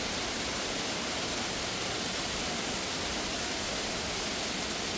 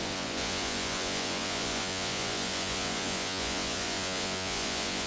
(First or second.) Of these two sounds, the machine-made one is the second